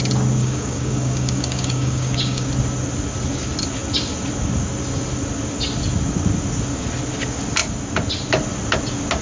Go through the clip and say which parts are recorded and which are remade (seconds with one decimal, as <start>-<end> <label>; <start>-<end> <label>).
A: 0.0-0.4 recorded; 0.4-2.5 remade; 2.5-9.2 recorded